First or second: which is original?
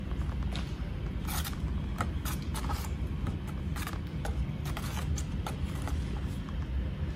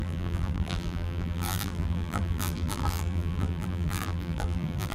first